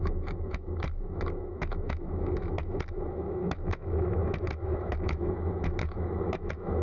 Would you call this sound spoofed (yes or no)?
yes